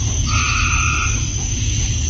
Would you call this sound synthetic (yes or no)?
no